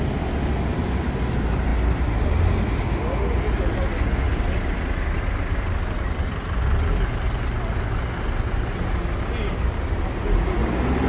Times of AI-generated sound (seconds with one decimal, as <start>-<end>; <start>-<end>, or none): none